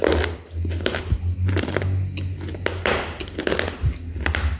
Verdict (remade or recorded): recorded